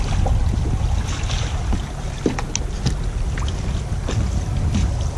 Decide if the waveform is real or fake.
real